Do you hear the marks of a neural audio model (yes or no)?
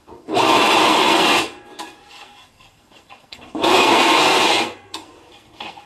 yes